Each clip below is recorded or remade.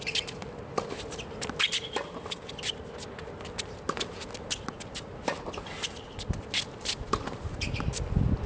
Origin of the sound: recorded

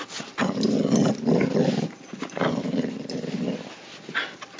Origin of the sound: recorded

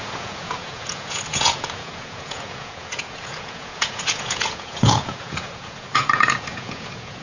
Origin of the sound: remade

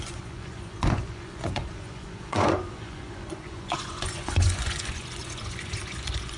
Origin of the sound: remade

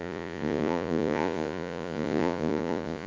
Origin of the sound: remade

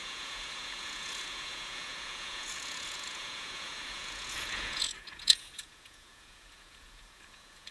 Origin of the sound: remade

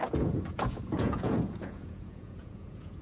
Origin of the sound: remade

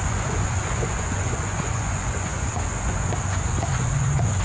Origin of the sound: remade